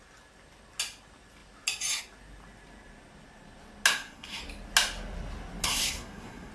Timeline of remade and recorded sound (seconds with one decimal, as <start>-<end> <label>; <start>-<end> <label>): 0.0-3.9 recorded; 3.9-4.4 remade; 4.4-5.6 recorded; 5.6-6.5 remade